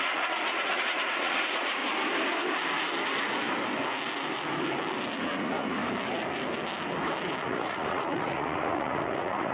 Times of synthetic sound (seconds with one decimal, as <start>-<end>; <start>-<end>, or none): 0.0-1.8; 5.2-5.8; 7.4-9.5